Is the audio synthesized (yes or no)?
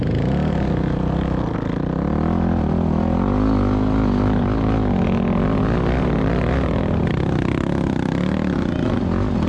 no